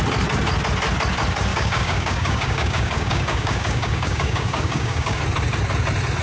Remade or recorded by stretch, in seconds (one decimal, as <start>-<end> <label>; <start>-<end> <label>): 0.0-1.5 recorded; 1.5-5.2 remade; 5.2-6.2 recorded